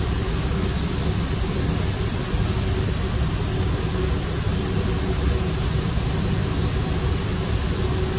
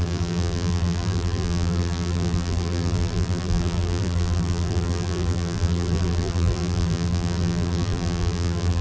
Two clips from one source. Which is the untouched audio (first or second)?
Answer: first